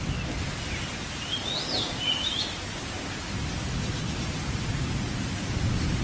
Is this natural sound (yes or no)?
yes